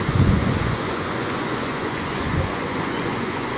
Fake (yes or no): yes